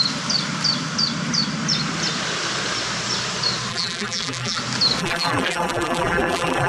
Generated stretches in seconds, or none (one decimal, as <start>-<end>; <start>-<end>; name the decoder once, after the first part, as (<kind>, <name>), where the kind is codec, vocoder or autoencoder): 3.7-4.6 (vocoder, BigVGAN v2); 5.0-6.7